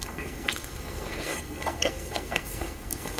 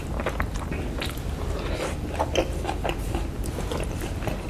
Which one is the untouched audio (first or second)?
second